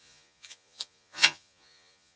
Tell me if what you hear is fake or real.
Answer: fake